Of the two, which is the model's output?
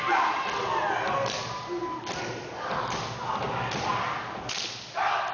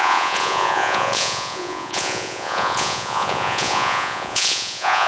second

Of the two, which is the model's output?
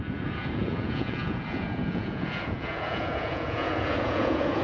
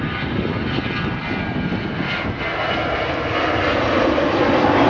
first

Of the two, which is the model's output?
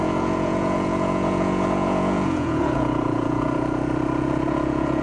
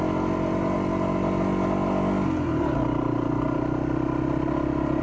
first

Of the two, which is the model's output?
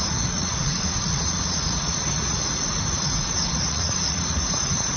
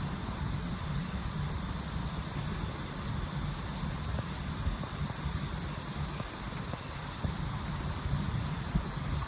first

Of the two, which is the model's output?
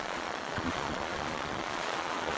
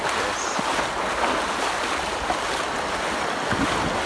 first